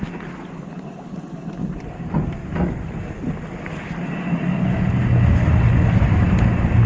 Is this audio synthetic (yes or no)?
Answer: no